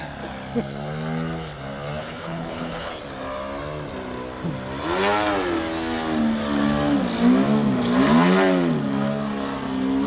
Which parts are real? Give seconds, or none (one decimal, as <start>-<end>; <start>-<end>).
0.0-2.0; 2.9-10.1